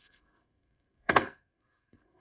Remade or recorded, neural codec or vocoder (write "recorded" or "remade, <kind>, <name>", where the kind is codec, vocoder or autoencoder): remade, codec, SNAC